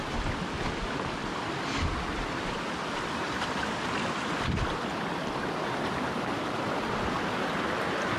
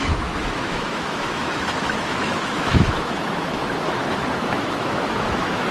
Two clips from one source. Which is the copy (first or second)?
second